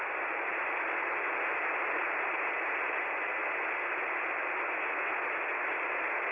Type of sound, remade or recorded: recorded